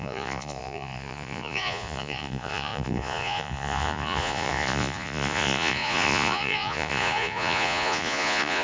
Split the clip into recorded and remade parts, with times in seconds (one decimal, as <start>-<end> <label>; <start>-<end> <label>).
0.0-8.6 remade